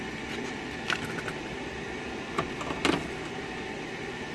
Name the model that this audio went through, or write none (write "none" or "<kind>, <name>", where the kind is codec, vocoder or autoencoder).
none